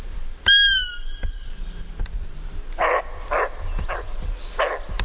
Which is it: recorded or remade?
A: recorded